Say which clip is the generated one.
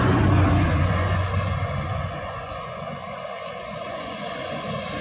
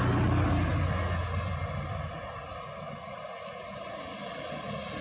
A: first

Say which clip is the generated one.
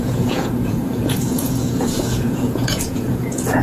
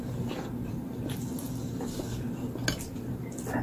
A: first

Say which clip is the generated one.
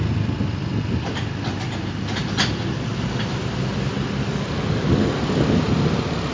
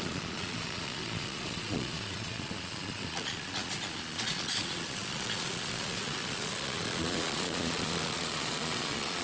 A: second